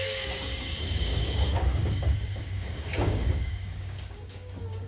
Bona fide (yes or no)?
no